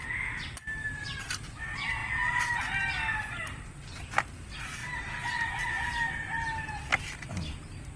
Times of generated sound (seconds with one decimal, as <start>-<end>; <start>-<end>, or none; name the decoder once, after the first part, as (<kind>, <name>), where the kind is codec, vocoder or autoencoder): none